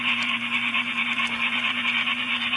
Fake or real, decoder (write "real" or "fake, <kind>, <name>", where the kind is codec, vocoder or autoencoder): fake, vocoder, Vocos